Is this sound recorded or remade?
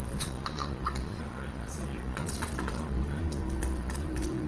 remade